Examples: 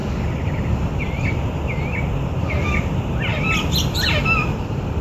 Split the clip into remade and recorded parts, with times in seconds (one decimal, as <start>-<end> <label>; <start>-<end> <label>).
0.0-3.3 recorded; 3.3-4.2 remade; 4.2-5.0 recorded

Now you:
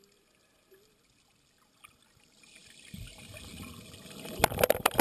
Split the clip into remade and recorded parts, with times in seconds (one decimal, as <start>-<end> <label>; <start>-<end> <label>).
0.0-5.0 recorded

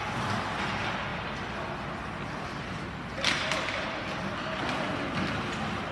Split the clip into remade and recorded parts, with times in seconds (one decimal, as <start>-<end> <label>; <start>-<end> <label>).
0.0-5.9 recorded

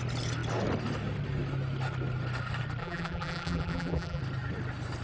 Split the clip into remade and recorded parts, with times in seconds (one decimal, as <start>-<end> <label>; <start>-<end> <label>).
0.0-2.8 recorded; 2.8-4.2 remade; 4.2-5.0 recorded

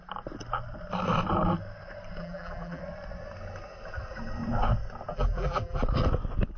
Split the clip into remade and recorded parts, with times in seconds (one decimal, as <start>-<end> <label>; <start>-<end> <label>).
0.0-2.2 recorded; 2.2-2.8 remade; 2.8-5.1 recorded; 5.1-5.8 remade; 5.8-6.6 recorded

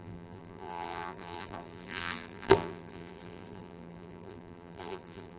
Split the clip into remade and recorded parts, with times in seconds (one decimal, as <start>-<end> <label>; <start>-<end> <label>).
0.0-5.4 remade